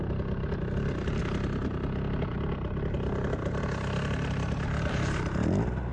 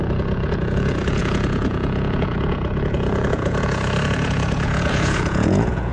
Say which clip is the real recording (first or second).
first